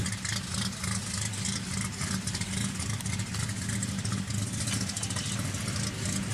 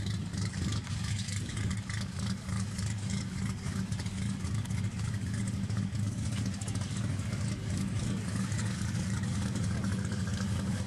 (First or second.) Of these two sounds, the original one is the first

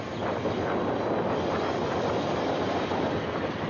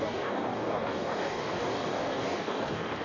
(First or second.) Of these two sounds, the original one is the first